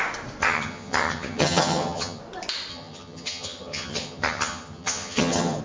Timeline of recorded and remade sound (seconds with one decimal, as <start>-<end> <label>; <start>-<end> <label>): 0.0-0.4 recorded; 0.4-2.2 remade; 2.2-2.7 recorded; 2.7-5.6 remade